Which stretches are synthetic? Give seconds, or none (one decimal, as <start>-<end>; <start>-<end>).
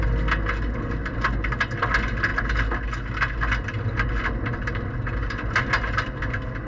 none